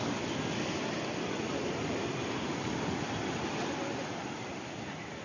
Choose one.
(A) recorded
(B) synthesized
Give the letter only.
A